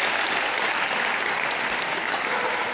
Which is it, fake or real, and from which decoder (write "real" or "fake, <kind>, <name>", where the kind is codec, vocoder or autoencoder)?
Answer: fake, vocoder, BigVGAN v2